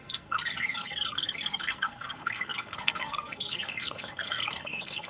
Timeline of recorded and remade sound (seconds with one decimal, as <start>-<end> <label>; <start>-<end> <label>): 0.0-5.1 remade